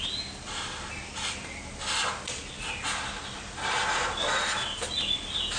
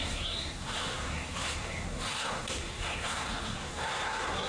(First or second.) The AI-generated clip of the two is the second